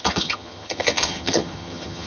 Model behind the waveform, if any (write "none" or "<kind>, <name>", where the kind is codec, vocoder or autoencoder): vocoder, HiFi-GAN